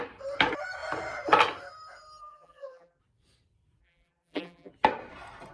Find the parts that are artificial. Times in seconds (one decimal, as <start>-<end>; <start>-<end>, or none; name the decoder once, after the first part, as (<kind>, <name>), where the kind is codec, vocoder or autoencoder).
2.2-3.0 (vocoder, BigVGAN v2); 3.8-4.7